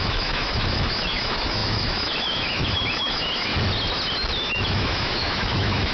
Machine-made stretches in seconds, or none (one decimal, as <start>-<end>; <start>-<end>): 0.0-3.5; 4.4-5.9